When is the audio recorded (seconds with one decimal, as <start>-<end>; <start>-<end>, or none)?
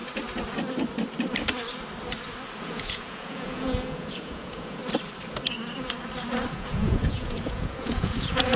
0.0-2.6; 4.8-6.5